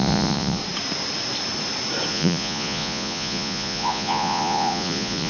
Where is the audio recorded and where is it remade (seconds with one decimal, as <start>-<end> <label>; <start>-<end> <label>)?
0.0-0.6 remade; 0.6-2.1 recorded; 2.1-5.3 remade